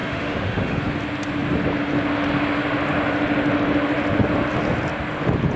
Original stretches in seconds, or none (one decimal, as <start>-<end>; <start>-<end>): 0.8-5.6